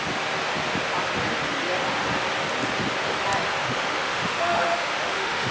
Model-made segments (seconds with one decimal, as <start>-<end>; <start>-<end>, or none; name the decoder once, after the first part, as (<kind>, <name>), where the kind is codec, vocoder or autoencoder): 3.6-5.5 (autoencoder, DAC-VAE)